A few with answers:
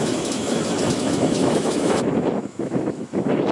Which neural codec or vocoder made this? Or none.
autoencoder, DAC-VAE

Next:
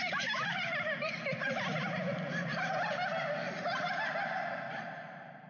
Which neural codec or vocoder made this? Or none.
vocoder, BigVGAN v2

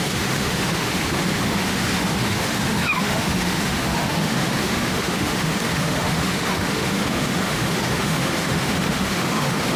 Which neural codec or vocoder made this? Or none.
autoencoder, DAC-VAE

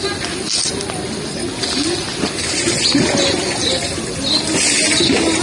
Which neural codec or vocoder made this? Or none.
none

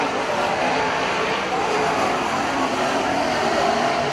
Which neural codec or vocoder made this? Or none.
vocoder, BigVGAN v2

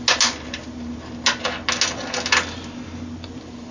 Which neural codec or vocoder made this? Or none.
none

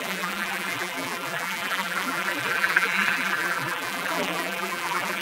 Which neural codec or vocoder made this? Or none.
vocoder, BigVGAN v2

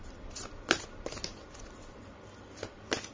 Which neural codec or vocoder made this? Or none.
none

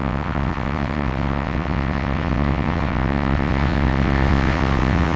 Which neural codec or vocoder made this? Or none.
vocoder, WaveNeXt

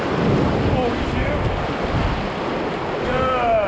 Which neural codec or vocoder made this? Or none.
none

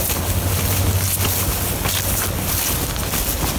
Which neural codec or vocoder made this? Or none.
none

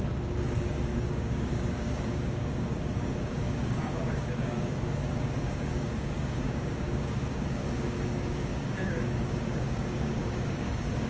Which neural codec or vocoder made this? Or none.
codec, DAC